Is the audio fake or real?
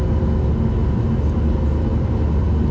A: real